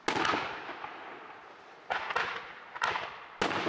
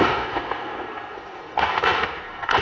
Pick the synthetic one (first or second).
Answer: second